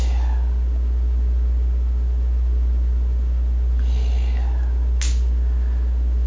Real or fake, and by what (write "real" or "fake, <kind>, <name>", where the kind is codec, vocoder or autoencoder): real